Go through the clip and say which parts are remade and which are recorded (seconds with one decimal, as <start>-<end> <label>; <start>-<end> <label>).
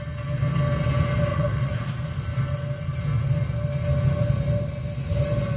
0.0-1.3 recorded; 1.3-1.9 remade; 1.9-5.6 recorded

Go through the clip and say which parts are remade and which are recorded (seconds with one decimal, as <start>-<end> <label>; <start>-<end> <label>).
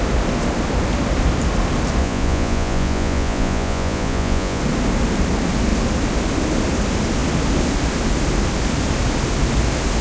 0.0-2.0 recorded; 2.0-4.6 remade; 4.6-10.0 recorded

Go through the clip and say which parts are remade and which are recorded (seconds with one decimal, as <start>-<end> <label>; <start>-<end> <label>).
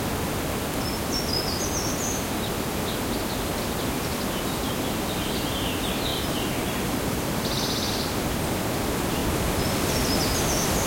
0.0-6.1 recorded; 6.1-7.9 remade; 7.9-10.9 recorded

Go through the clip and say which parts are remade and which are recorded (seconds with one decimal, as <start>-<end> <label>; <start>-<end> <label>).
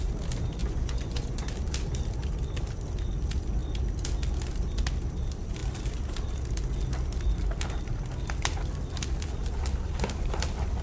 0.0-0.6 recorded; 0.6-1.5 remade; 1.5-10.8 recorded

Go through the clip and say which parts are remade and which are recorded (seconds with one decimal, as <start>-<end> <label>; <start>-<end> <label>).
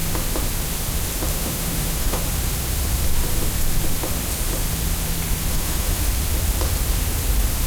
0.0-1.3 recorded; 1.3-2.2 remade; 2.2-5.5 recorded; 5.5-6.1 remade; 6.1-7.7 recorded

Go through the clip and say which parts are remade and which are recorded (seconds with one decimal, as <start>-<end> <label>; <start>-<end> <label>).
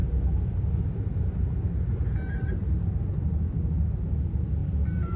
0.0-1.7 remade; 1.7-2.4 recorded; 2.4-3.8 remade; 3.8-5.2 recorded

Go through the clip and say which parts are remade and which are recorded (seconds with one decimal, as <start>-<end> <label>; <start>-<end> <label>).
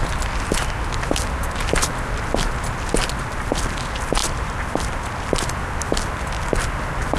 0.0-4.2 recorded; 4.2-5.3 remade; 5.3-7.2 recorded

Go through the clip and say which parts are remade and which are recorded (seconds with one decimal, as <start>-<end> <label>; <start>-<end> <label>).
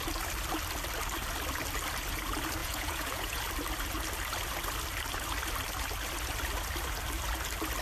0.0-2.6 recorded; 2.6-3.4 remade; 3.4-7.8 recorded